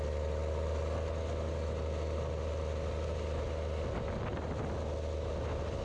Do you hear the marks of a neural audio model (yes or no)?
no